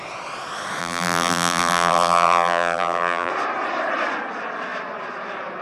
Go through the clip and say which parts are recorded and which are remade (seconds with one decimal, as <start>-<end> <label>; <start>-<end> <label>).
0.0-0.8 recorded; 0.8-3.3 remade; 3.3-5.6 recorded